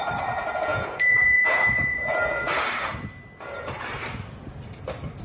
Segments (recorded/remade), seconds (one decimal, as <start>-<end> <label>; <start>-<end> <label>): 0.0-0.7 recorded; 0.7-2.0 remade; 2.0-5.2 recorded